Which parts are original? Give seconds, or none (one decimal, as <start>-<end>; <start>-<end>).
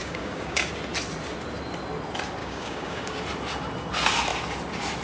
0.7-2.4; 3.2-5.0